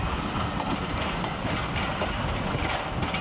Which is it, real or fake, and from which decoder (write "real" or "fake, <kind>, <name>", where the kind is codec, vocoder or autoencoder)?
real